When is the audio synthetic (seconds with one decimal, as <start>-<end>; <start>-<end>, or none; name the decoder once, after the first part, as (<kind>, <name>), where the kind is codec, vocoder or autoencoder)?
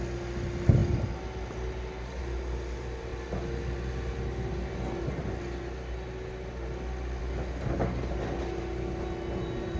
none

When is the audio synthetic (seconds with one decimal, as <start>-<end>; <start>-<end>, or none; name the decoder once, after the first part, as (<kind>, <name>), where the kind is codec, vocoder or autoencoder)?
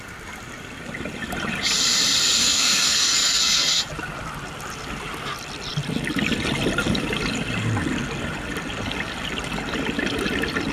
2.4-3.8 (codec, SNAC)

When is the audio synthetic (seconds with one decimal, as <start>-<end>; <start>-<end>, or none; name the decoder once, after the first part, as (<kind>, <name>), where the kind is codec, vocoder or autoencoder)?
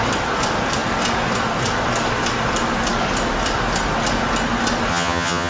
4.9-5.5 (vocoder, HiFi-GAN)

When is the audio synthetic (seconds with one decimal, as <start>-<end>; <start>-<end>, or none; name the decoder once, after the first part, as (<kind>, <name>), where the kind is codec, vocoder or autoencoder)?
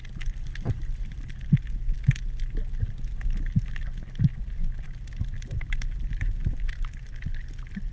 4.3-7.5 (vocoder, BigVGAN v2)